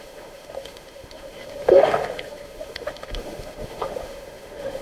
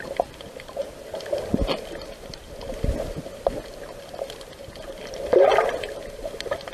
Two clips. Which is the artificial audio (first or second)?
first